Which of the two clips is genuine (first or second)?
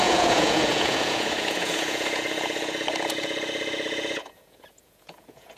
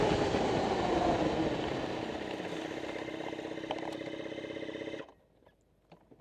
second